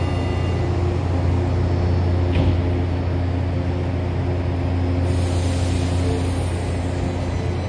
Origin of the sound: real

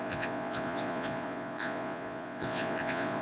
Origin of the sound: fake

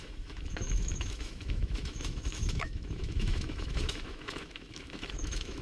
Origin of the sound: fake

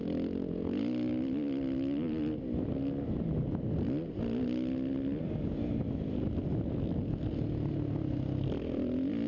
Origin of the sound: real